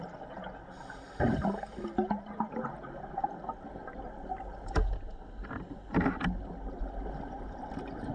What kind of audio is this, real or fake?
real